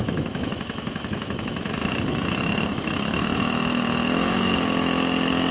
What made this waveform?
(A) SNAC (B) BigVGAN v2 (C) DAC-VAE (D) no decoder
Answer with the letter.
C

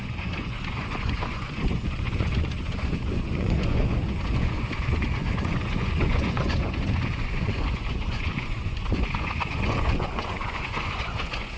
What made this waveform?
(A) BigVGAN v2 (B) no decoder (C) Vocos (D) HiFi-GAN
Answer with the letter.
C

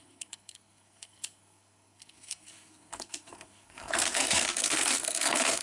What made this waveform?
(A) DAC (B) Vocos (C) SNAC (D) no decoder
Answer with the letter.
C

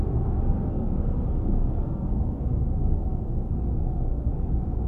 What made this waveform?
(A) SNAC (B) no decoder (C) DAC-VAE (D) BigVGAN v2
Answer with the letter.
A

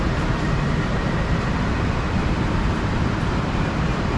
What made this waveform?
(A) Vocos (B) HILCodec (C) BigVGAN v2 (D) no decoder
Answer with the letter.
C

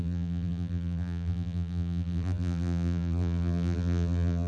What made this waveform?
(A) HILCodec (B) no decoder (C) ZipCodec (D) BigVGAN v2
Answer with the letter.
D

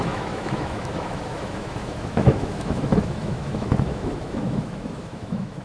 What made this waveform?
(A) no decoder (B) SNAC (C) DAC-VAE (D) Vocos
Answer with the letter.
C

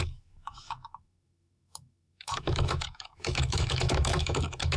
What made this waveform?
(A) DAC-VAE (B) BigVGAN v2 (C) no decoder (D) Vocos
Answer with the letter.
A